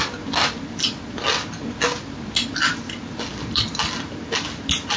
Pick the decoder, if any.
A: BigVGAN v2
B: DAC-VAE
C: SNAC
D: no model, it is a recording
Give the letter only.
D